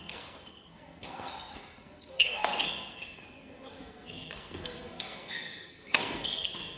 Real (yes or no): no